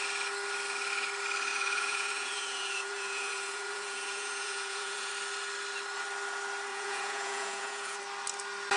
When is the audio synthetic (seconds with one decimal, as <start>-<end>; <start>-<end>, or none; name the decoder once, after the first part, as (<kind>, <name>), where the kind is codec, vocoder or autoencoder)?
1.5-5.1 (vocoder, Vocos); 6.7-8.0